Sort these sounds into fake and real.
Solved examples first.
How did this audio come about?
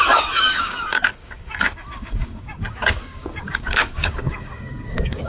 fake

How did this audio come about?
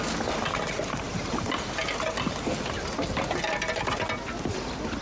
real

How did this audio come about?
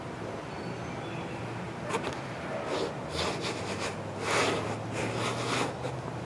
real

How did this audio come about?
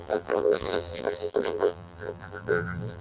fake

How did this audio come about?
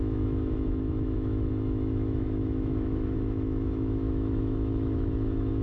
fake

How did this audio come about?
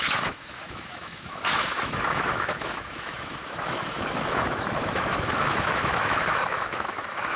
fake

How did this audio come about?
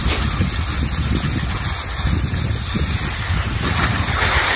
real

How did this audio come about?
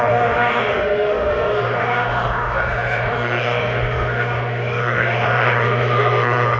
fake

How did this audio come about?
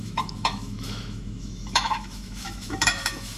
fake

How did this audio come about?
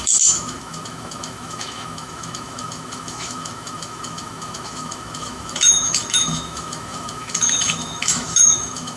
fake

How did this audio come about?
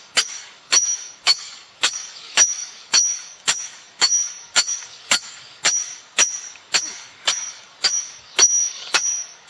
fake